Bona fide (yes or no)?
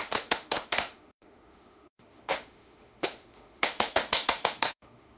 no